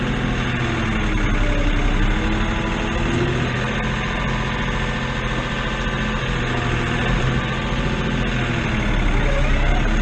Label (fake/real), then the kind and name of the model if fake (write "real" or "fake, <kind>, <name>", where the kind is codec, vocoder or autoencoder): real